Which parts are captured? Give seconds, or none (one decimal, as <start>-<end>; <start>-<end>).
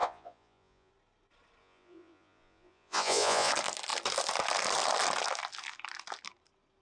0.9-1.6; 3.5-6.8